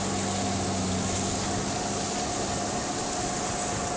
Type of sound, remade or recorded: recorded